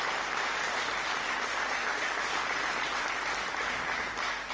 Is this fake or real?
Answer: real